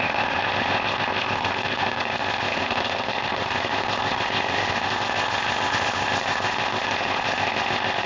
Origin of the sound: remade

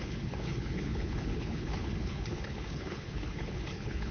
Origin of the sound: remade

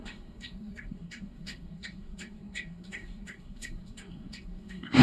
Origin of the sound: remade